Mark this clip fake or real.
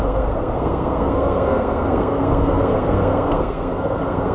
fake